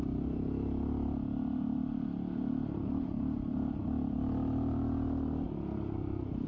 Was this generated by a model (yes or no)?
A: no